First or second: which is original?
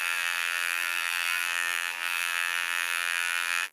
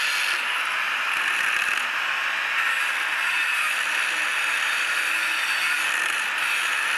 second